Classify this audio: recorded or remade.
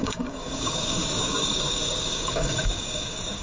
remade